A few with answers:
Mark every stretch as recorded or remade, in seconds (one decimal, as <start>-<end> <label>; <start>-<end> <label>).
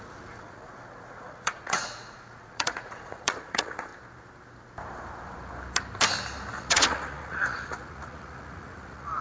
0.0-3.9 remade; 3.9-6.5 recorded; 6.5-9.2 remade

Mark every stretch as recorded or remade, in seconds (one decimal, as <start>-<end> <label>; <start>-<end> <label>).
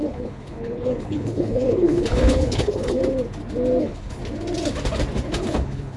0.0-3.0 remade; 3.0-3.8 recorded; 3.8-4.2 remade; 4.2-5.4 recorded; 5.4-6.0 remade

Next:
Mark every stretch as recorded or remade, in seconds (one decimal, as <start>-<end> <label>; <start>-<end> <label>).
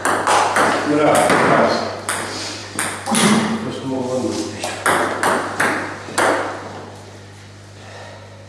0.0-8.5 recorded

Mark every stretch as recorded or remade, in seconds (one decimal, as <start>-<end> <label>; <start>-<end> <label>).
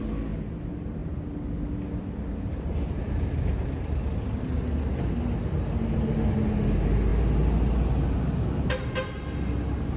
0.0-10.0 recorded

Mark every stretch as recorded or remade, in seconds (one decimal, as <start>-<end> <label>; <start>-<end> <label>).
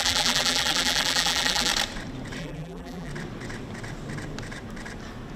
0.0-1.7 remade; 1.7-2.4 recorded; 2.4-3.1 remade; 3.1-5.4 recorded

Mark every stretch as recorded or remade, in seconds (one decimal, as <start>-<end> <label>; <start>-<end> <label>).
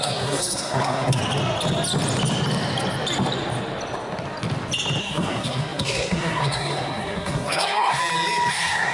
0.0-1.2 remade; 1.2-5.0 recorded; 5.0-8.0 remade; 8.0-8.5 recorded; 8.5-8.9 remade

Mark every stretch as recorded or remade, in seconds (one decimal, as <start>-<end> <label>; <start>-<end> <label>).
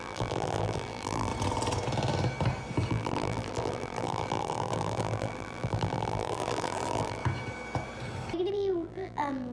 0.0-1.3 remade; 1.3-2.9 recorded; 2.9-7.2 remade; 7.2-8.5 recorded; 8.5-9.5 remade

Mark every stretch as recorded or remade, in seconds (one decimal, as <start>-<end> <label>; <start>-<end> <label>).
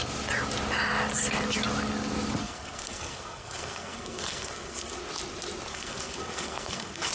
0.0-2.4 recorded; 2.4-5.0 remade; 5.0-5.7 recorded; 5.7-7.1 remade